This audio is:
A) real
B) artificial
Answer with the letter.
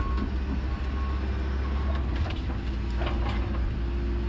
A